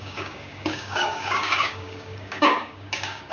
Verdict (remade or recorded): remade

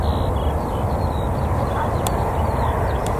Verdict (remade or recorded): recorded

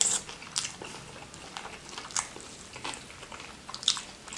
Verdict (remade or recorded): recorded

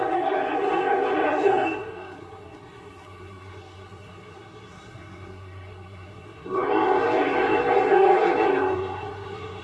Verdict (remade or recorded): remade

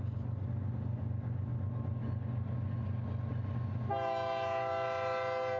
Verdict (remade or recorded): recorded